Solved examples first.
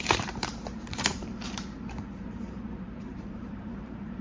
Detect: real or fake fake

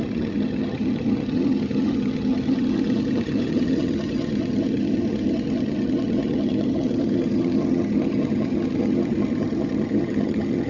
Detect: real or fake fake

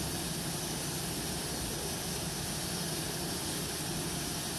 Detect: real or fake real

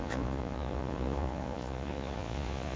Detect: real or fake fake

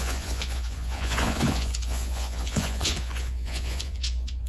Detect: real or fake fake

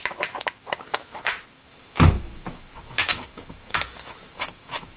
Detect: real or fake fake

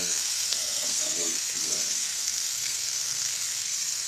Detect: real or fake fake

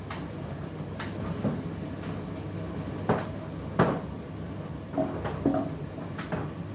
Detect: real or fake real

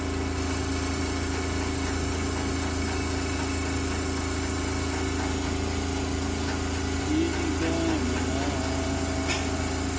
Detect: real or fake real